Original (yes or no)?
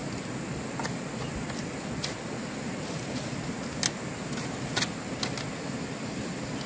yes